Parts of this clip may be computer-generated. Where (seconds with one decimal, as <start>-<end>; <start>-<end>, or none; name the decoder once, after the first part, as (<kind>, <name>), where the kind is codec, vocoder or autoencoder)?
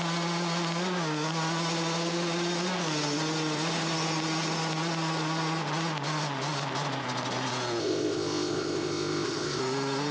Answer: 7.8-9.6 (codec, ZipCodec)